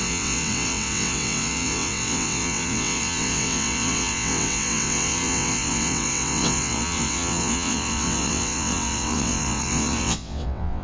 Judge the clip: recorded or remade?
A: remade